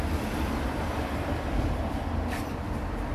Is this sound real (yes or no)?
yes